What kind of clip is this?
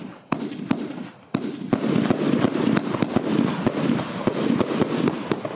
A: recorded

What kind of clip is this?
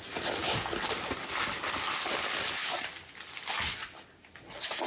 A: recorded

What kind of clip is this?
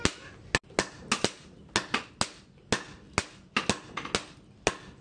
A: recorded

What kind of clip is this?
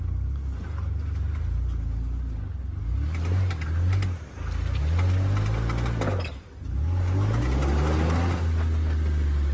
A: recorded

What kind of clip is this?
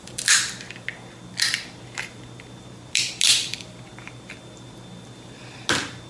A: recorded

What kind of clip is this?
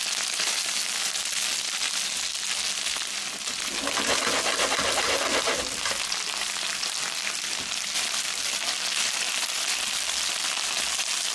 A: recorded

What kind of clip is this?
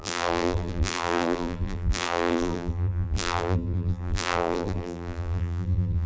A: remade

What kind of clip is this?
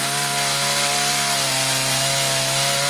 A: recorded